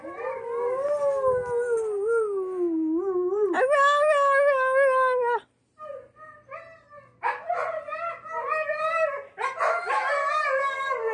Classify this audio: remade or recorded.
recorded